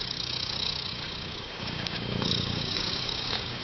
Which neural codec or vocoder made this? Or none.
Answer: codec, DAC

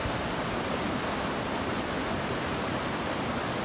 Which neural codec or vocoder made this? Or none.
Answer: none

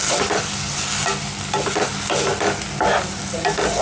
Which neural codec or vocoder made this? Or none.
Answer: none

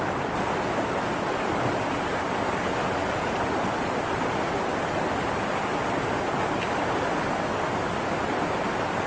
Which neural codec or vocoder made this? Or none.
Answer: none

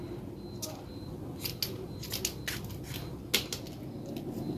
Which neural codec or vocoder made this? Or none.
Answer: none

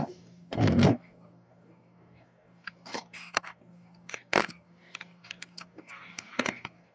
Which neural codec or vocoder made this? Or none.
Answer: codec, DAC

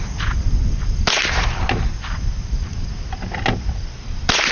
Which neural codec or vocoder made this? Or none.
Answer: none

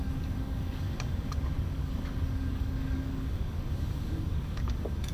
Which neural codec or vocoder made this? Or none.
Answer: codec, DAC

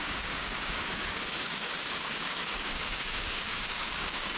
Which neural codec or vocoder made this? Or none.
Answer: codec, DAC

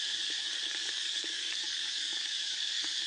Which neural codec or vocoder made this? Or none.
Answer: codec, DAC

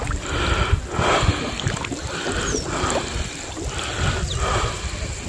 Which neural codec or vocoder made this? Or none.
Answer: none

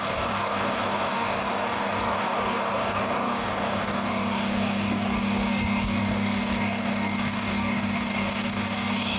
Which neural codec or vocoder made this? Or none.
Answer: codec, DAC